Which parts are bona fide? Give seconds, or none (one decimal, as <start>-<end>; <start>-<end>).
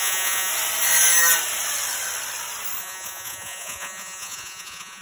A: 0.5-2.8